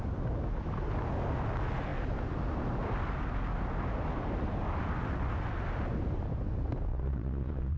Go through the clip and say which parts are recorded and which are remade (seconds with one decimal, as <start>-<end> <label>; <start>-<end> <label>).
0.0-6.9 recorded; 6.9-7.8 remade

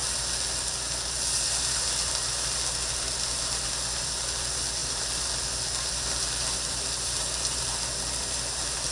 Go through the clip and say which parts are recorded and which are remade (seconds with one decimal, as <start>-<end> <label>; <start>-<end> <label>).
0.0-8.9 recorded

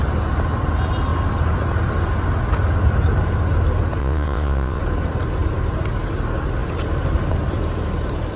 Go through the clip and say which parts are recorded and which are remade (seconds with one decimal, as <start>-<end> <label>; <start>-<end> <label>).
0.0-4.0 recorded; 4.0-4.8 remade; 4.8-8.4 recorded

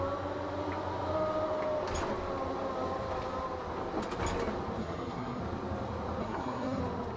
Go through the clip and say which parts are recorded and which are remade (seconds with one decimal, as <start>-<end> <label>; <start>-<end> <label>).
0.0-4.8 recorded; 4.8-5.4 remade; 5.4-6.2 recorded; 6.2-6.8 remade; 6.8-7.2 recorded